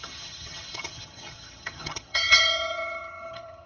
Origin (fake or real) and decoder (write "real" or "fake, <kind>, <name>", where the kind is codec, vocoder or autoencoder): fake, vocoder, HiFi-GAN